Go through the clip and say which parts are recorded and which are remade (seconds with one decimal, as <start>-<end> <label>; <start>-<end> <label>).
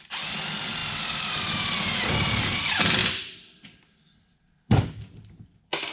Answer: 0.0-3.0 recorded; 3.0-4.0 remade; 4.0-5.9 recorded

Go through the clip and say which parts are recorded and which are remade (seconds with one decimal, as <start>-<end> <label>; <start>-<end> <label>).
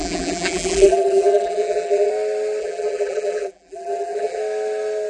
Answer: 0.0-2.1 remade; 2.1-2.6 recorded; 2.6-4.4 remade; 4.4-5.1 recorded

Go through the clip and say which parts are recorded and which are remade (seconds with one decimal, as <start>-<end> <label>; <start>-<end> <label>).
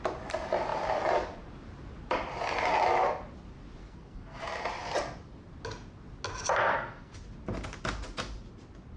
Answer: 0.0-3.8 recorded; 3.8-4.4 remade; 4.4-6.6 recorded; 6.6-7.1 remade; 7.1-9.0 recorded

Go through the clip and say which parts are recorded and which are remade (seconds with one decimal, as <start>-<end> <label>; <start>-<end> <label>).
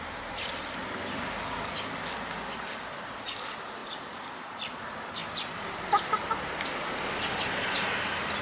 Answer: 0.0-8.4 recorded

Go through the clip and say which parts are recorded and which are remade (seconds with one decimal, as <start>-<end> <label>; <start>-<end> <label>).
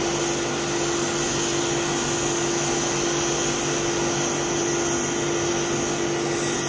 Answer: 0.0-6.7 recorded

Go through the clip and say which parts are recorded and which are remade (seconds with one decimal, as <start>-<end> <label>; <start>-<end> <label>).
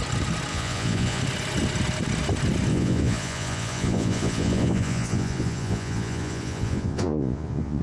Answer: 0.0-0.5 recorded; 0.5-1.2 remade; 1.2-2.7 recorded; 2.7-7.8 remade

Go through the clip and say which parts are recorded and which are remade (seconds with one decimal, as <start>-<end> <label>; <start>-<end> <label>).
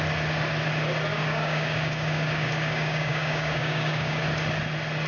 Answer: 0.0-1.1 recorded; 1.1-4.2 remade; 4.2-5.1 recorded